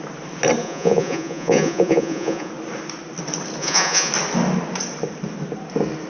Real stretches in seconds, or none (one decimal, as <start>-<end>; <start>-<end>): 0.0-0.6; 2.5-3.6; 4.1-6.1